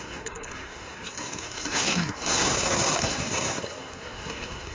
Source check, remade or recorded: remade